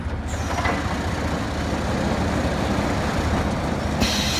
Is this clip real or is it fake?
real